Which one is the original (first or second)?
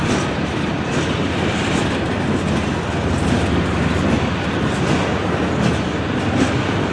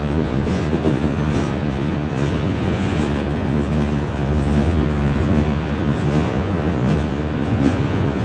first